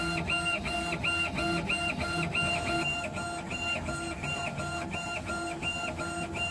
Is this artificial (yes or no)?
no